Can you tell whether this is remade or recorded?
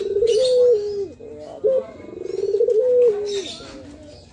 recorded